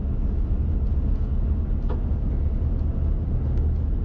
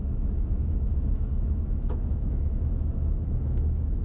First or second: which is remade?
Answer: second